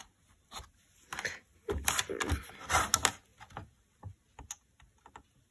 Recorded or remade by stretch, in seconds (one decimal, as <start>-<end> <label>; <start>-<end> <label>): 0.0-5.5 recorded